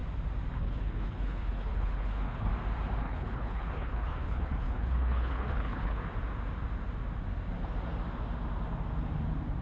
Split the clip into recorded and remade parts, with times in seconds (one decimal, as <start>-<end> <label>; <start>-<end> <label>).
0.0-0.5 recorded; 0.5-2.5 remade; 2.5-3.0 recorded; 3.0-6.0 remade; 6.0-9.6 recorded